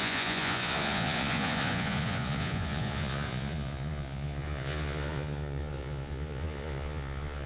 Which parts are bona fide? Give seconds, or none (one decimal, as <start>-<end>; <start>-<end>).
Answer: none

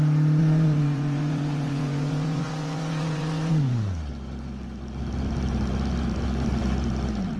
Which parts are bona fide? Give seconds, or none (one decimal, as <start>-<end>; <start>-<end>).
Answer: 0.0-0.4; 4.1-7.4

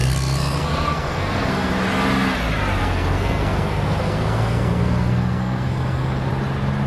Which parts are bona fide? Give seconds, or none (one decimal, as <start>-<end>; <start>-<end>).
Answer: 1.7-2.8; 6.3-6.9

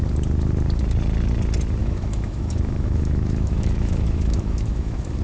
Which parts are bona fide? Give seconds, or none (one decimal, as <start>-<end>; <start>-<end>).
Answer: 0.0-1.8